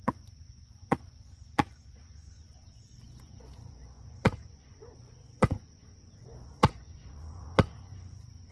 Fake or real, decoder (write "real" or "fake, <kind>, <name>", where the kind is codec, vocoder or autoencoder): fake, vocoder, Vocos